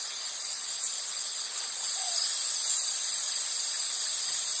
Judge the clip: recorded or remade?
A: remade